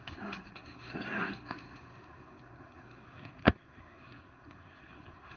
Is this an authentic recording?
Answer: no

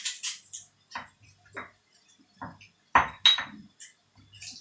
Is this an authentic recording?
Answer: yes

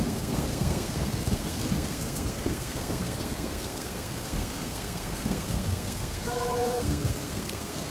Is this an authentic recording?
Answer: no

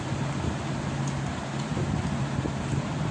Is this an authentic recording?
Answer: yes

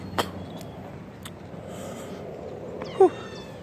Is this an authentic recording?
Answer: yes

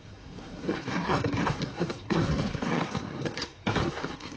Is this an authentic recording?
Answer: no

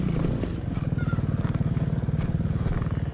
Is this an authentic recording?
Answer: yes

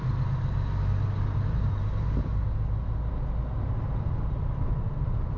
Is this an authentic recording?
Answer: yes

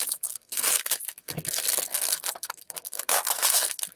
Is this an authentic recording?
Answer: no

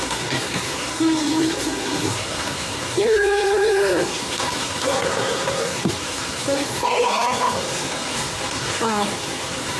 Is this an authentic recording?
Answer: no